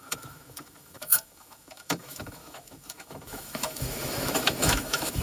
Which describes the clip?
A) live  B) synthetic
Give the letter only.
B